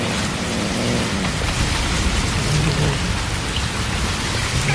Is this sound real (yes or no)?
yes